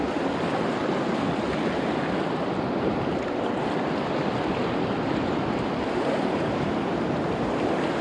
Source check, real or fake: real